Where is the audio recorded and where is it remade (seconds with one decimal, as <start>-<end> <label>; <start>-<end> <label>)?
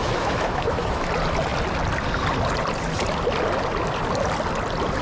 0.0-1.1 remade; 1.1-5.0 recorded